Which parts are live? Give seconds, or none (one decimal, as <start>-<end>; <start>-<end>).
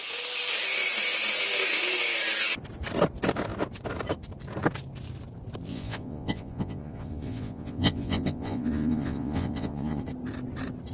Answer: 0.0-5.7; 10.0-10.9